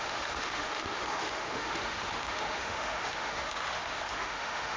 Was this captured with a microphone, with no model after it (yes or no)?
no